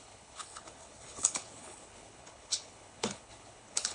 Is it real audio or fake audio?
fake